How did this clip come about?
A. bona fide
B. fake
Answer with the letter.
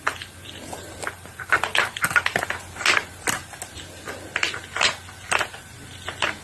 A